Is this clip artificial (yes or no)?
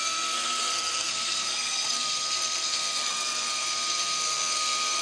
yes